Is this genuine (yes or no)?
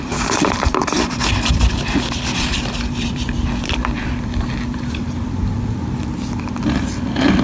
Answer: no